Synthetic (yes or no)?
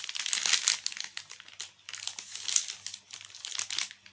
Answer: no